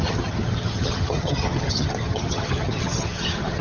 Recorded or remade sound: remade